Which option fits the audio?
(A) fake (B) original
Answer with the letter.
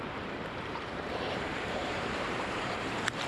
A